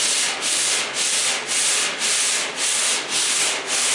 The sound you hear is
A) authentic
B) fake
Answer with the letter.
A